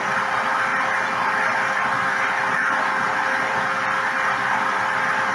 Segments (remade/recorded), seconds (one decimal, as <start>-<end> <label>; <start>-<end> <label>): 0.0-5.3 recorded